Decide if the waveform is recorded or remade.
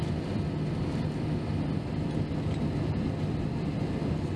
recorded